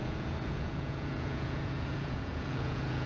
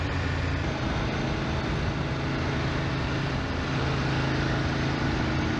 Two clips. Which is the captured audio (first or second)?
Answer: second